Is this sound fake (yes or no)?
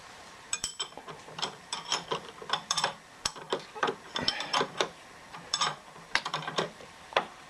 yes